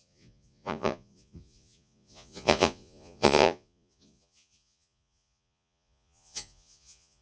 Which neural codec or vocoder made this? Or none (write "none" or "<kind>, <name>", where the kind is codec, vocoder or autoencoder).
vocoder, Vocos